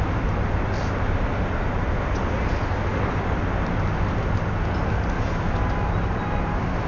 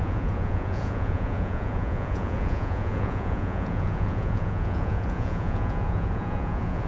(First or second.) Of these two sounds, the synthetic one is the second